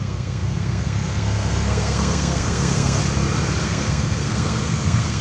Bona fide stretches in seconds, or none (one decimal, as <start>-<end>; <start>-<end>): 3.0-3.6